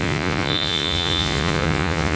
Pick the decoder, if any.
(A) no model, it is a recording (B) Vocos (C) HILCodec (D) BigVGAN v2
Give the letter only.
B